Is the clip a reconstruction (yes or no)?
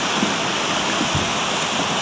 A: no